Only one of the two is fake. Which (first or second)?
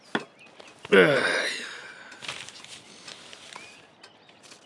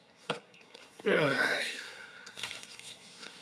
second